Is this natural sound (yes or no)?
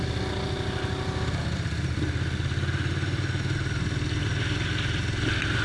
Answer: yes